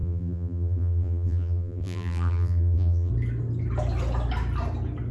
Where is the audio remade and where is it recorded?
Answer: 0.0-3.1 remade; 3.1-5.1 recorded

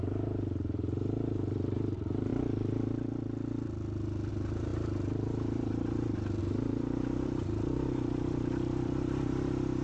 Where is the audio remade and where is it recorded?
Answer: 0.0-2.3 remade; 2.3-4.3 recorded; 4.3-9.8 remade

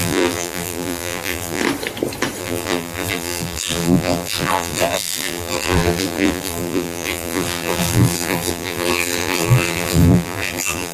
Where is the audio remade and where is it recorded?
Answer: 0.0-1.6 remade; 1.6-2.4 recorded; 2.4-10.9 remade

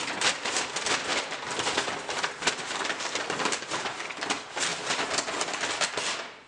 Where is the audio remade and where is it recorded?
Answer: 0.0-4.7 recorded; 4.7-5.5 remade; 5.5-6.5 recorded

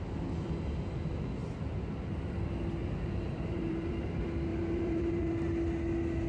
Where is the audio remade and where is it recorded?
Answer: 0.0-2.8 recorded; 2.8-3.9 remade; 3.9-4.5 recorded; 4.5-5.3 remade; 5.3-6.3 recorded

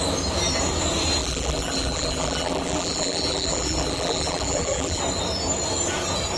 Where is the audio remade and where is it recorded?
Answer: 0.0-1.2 recorded; 1.2-5.0 remade; 5.0-6.4 recorded